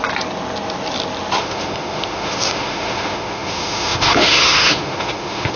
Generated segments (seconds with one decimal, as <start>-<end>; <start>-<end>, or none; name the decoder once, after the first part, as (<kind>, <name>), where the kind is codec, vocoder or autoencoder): 1.4-5.6 (autoencoder, DAC-VAE)